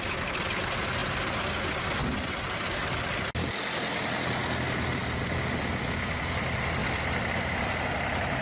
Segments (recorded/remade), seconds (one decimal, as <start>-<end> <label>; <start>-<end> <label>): 0.0-8.4 recorded

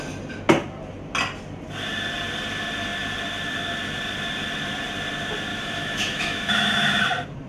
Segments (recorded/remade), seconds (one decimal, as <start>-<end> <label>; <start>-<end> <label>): 0.0-5.5 recorded; 5.5-6.9 remade; 6.9-7.5 recorded

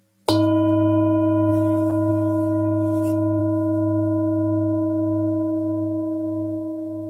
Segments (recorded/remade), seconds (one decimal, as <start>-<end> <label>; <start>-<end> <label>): 0.0-3.4 recorded; 3.4-7.1 remade

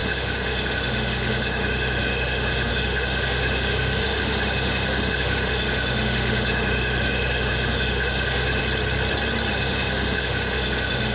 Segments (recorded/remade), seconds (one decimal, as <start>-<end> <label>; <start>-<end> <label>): 0.0-8.6 remade; 8.6-9.5 recorded; 9.5-11.1 remade